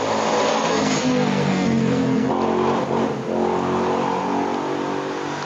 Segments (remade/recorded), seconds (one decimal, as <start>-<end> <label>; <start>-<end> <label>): 0.0-0.5 recorded; 0.5-2.3 remade; 2.3-5.5 recorded

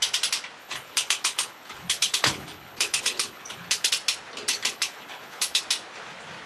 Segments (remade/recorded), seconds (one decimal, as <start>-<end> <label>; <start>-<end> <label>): 0.0-0.6 recorded; 0.6-3.9 remade; 3.9-4.5 recorded; 4.5-5.6 remade; 5.6-6.5 recorded

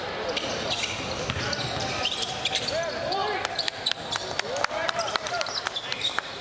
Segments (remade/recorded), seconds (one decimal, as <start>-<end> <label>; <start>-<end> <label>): 0.0-6.4 recorded

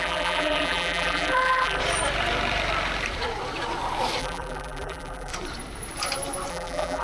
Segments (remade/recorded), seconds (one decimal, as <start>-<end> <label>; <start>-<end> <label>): 0.0-1.8 remade; 1.8-4.2 recorded; 4.2-5.3 remade; 5.3-6.5 recorded; 6.5-7.0 remade

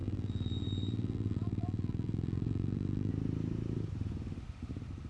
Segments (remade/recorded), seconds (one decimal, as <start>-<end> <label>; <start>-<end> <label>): 0.0-3.1 remade; 3.1-5.1 recorded

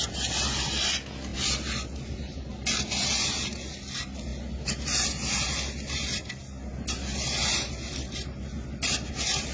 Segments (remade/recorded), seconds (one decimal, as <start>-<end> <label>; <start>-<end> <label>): 0.0-9.5 recorded

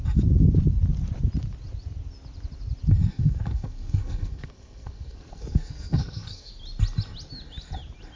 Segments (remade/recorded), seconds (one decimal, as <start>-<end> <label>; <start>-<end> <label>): 0.0-3.1 recorded; 3.1-6.5 remade; 6.5-8.2 recorded